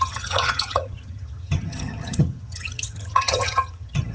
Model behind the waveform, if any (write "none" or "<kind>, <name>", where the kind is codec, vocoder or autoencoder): vocoder, HiFi-GAN